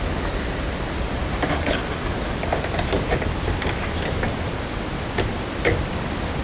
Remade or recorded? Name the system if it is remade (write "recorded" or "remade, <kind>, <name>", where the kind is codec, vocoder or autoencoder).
remade, vocoder, BigVGAN v2